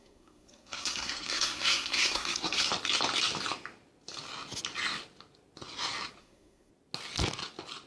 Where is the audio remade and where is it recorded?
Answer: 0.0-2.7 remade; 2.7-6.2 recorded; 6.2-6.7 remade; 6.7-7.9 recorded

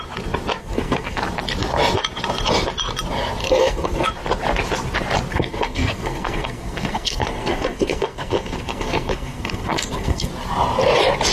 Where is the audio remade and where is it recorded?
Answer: 0.0-0.6 recorded; 0.6-1.2 remade; 1.2-3.4 recorded; 3.4-4.1 remade; 4.1-5.3 recorded; 5.3-10.3 remade; 10.3-11.3 recorded

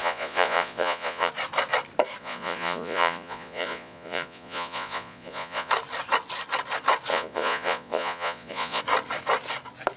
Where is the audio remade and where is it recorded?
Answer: 0.0-1.3 remade; 1.3-2.2 recorded; 2.2-5.7 remade; 5.7-7.1 recorded; 7.1-8.8 remade; 8.8-10.0 recorded

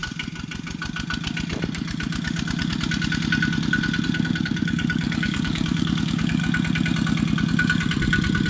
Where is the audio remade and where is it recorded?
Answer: 0.0-4.4 recorded; 4.4-6.4 remade; 6.4-8.5 recorded

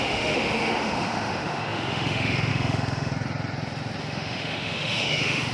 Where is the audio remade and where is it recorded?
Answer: 0.0-3.1 remade; 3.1-4.0 recorded; 4.0-5.5 remade

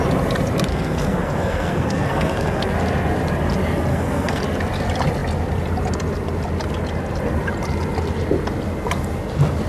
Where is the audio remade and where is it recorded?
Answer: 0.0-0.7 recorded; 0.7-2.7 remade; 2.7-3.9 recorded; 3.9-4.4 remade; 4.4-9.7 recorded

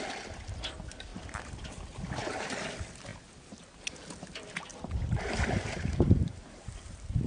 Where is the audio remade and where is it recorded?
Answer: 0.0-1.1 recorded; 1.1-2.5 remade; 2.5-4.7 recorded; 4.7-6.8 remade; 6.8-7.3 recorded